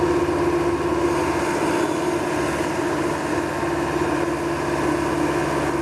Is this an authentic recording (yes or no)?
yes